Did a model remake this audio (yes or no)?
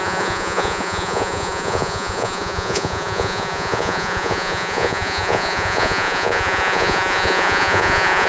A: yes